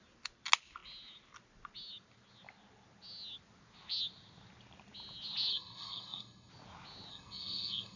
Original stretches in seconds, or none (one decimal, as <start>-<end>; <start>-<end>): 0.0-5.5; 6.5-7.1